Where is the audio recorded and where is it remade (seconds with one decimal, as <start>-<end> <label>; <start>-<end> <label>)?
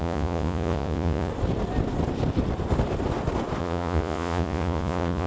0.0-1.3 remade; 1.3-3.6 recorded; 3.6-5.3 remade